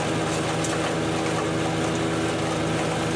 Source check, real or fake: real